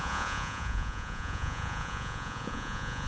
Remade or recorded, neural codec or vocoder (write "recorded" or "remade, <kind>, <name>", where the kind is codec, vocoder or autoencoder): remade, vocoder, Vocos